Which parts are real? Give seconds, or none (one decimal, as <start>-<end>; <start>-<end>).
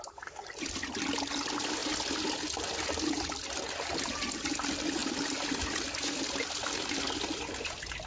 0.0-8.1